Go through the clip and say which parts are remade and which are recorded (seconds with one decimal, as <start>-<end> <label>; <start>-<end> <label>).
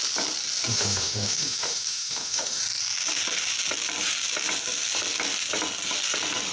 0.0-0.7 recorded; 0.7-2.6 remade; 2.6-6.5 recorded